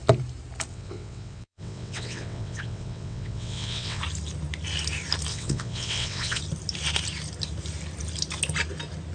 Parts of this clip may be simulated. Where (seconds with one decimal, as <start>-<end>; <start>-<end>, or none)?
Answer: 0.7-4.0; 5.3-6.4